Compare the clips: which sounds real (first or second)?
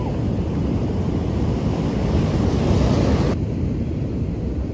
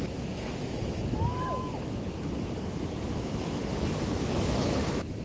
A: first